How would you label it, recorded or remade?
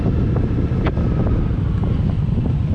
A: recorded